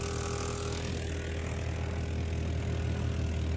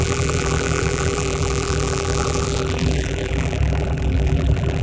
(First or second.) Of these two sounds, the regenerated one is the second